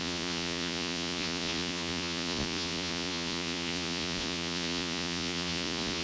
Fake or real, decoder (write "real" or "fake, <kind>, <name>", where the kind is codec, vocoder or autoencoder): fake, vocoder, Vocos